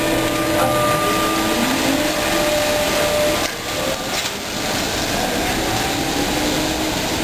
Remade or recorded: remade